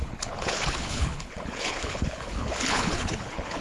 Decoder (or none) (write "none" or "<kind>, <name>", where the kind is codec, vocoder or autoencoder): codec, HILCodec